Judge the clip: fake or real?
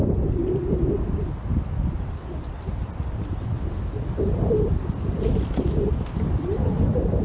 real